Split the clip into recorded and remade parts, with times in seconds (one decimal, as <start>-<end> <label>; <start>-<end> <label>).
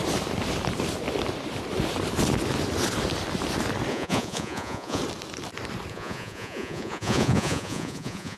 0.0-3.9 recorded; 3.9-5.0 remade; 5.0-5.9 recorded; 5.9-8.4 remade